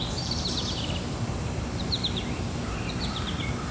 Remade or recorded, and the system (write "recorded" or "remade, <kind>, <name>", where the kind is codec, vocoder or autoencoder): remade, vocoder, BigVGAN v2